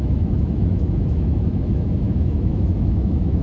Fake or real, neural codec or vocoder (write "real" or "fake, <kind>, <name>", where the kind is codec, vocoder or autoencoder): fake, autoencoder, DAC-VAE